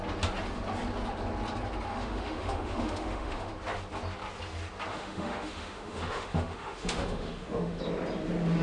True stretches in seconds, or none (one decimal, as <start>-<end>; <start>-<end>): 0.0-1.9; 3.5-4.9; 7.8-8.6